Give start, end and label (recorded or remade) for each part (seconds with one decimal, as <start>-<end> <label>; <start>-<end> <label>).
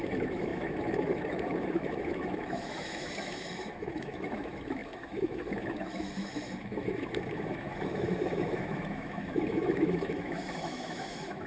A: 0.0-11.5 remade